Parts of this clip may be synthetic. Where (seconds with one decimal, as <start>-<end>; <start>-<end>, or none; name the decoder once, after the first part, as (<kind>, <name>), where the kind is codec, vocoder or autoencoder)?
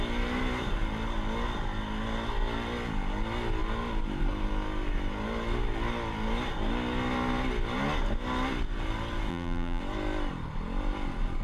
9.3-9.8 (vocoder, BigVGAN v2)